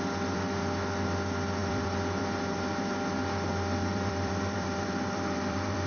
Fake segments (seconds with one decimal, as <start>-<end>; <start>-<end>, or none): 1.6-2.2; 3.9-5.9